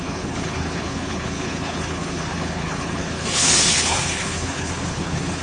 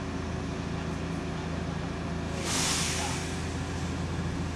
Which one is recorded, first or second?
second